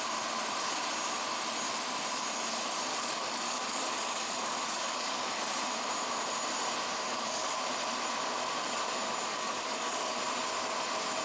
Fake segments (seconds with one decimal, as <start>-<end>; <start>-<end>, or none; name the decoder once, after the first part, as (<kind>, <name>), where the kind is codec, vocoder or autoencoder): 2.9-5.4 (codec, DAC); 6.9-7.6; 9.3-10.2